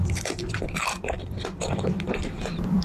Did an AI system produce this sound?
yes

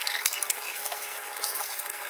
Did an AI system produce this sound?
yes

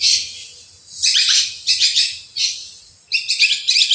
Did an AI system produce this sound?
no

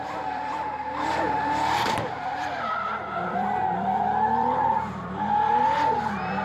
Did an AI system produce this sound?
yes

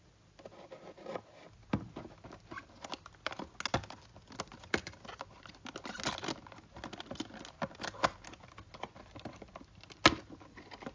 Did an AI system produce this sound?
no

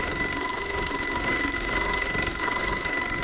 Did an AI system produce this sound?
yes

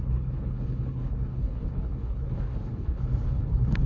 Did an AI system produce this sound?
yes